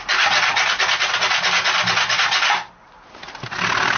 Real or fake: real